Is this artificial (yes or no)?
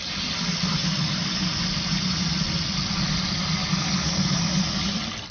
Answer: no